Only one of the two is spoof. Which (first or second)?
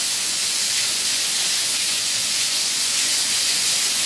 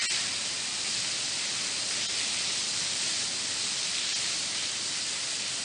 first